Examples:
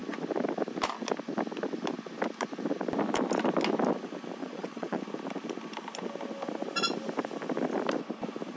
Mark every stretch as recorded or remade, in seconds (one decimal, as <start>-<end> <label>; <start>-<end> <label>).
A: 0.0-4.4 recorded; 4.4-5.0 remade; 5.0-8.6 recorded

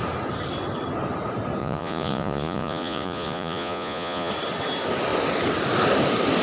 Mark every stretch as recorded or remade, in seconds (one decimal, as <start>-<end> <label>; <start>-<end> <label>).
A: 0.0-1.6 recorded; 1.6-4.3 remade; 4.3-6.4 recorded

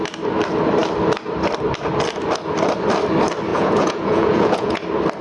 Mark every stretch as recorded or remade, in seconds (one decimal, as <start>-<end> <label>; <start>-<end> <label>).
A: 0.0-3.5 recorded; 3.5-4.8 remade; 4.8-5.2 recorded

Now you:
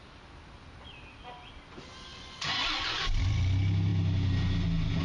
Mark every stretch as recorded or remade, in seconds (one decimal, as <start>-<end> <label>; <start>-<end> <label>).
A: 0.0-2.1 recorded; 2.1-3.0 remade; 3.0-5.0 recorded

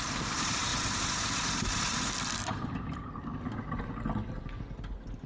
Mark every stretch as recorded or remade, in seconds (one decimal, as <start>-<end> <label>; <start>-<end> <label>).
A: 0.0-5.3 recorded

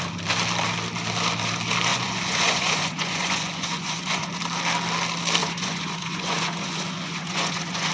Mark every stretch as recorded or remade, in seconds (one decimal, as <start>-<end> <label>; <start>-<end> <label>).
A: 0.0-1.9 recorded; 1.9-4.4 remade; 4.4-5.4 recorded; 5.4-7.9 remade

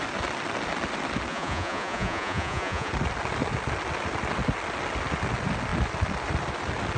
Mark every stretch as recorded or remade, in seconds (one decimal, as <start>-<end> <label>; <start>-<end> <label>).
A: 0.0-1.3 recorded; 1.3-2.9 remade; 2.9-7.0 recorded